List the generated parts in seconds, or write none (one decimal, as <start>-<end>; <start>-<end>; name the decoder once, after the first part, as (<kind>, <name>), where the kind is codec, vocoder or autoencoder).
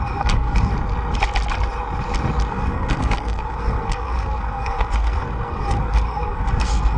0.0-0.7 (codec, SNAC); 2.5-7.0